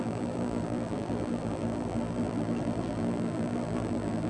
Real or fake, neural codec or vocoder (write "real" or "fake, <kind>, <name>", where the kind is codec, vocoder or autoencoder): fake, vocoder, BigVGAN v2